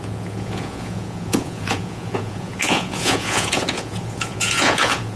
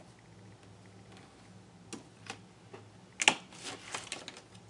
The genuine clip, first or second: second